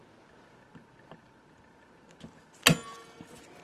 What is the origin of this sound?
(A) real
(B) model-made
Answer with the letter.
A